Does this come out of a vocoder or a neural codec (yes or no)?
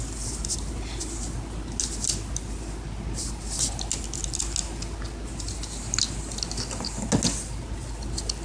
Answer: no